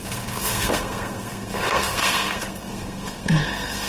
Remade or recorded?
remade